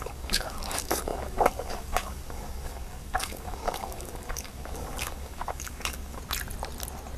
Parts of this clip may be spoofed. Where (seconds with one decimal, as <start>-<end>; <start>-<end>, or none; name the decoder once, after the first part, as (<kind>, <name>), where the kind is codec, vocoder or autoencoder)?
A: 0.0-6.2 (codec, DAC)